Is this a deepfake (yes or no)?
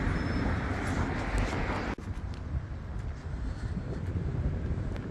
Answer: no